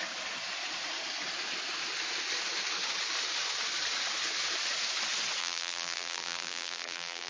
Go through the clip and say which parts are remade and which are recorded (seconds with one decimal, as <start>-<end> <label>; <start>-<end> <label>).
0.0-5.4 recorded; 5.4-7.3 remade